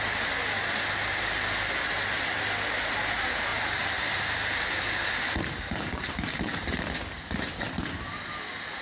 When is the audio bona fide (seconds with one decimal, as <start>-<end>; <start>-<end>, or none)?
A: 0.0-3.5; 7.6-8.8